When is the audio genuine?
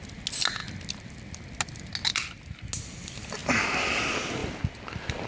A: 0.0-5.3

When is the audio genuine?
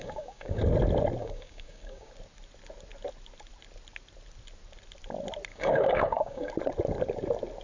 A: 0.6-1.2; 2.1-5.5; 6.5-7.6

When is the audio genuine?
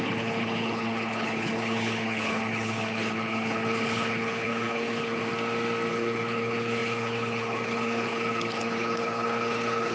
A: 5.2-5.9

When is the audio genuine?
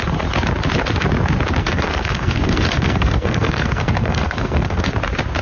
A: 0.0-1.6; 4.8-5.4